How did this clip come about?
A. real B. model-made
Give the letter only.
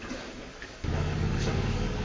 B